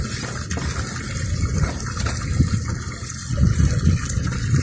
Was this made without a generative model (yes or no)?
yes